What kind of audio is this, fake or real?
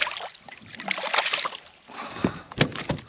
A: real